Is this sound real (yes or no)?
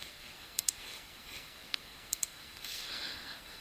no